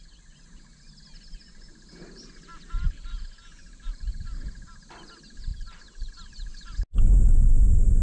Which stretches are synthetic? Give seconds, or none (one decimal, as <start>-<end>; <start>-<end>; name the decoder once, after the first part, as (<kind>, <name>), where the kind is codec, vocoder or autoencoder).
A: 3.6-4.2 (vocoder, BigVGAN v2); 5.5-6.1